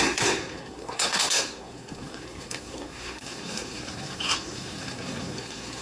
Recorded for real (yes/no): no